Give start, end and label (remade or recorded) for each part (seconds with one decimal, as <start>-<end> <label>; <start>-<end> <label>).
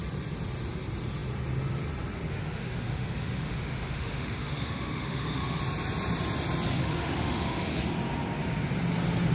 0.0-2.3 recorded; 2.3-5.6 remade; 5.6-6.8 recorded; 6.8-7.8 remade; 7.8-9.3 recorded